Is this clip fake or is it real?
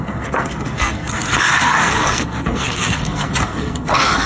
fake